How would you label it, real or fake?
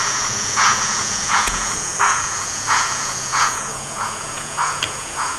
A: fake